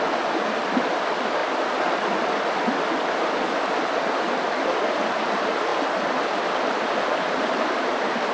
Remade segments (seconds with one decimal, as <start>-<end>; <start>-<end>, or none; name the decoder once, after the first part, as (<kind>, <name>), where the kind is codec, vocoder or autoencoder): none